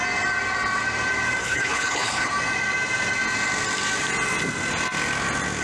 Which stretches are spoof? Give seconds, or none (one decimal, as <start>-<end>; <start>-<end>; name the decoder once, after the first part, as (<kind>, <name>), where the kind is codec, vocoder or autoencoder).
1.4-2.3 (codec, HILCodec)